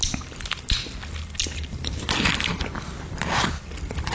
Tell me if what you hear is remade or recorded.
recorded